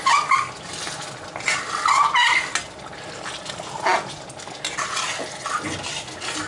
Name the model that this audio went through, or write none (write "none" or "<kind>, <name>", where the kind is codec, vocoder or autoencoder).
none